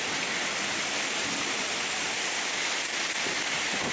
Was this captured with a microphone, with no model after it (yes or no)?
no